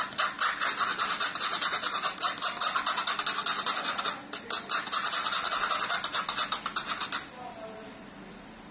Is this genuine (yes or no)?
yes